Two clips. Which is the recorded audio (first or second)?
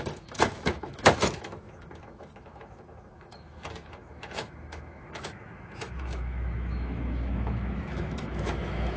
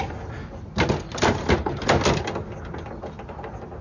second